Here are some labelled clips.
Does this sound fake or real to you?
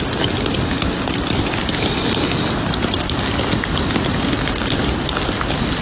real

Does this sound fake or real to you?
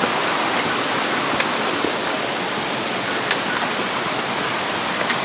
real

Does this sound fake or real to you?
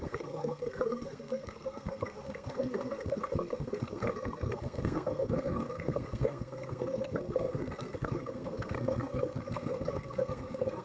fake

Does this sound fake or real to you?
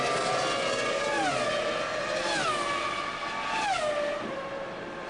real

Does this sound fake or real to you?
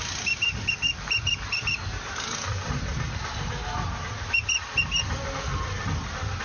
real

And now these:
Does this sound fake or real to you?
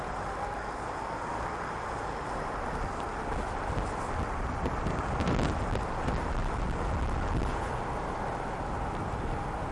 real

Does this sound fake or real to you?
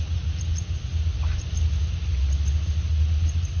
real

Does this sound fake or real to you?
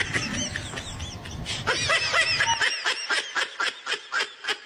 real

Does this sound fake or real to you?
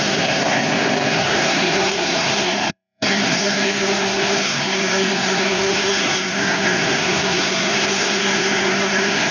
fake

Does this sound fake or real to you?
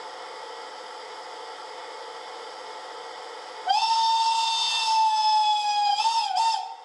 real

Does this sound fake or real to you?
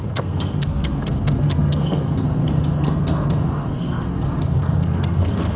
fake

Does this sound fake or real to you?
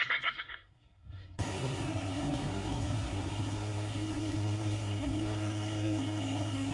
fake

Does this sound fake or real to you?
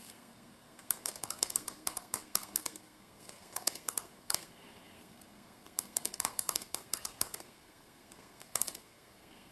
fake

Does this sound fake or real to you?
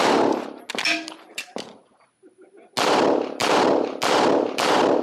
real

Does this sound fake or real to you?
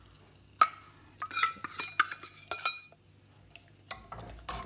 real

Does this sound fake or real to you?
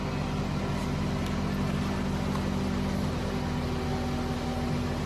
real